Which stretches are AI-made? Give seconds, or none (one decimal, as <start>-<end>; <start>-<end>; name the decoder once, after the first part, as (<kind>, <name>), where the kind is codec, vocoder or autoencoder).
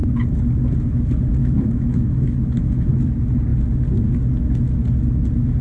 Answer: 1.4-2.9 (autoencoder, DAC-VAE)